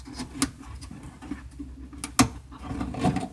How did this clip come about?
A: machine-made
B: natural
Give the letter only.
B